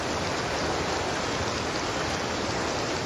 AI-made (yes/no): no